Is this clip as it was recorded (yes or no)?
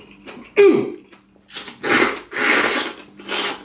yes